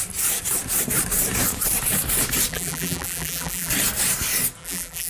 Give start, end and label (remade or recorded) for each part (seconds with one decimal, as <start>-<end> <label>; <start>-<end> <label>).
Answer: 0.0-2.5 recorded; 2.5-3.7 remade; 3.7-4.6 recorded; 4.6-5.1 remade